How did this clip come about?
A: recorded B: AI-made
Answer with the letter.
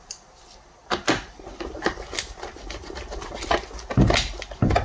A